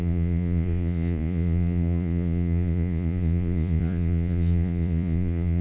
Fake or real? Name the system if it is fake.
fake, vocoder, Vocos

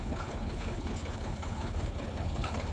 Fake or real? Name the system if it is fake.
fake, codec, HILCodec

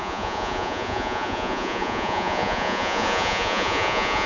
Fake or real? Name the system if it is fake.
fake, vocoder, Vocos